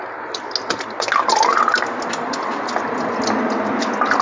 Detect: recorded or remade recorded